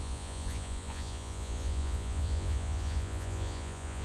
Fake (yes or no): yes